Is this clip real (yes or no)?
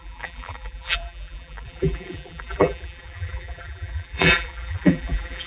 no